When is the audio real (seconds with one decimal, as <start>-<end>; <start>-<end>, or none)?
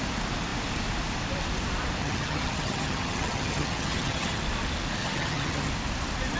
0.0-2.0; 4.4-5.0; 5.7-6.4